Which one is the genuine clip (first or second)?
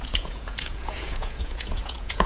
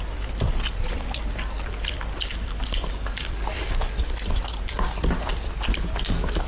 second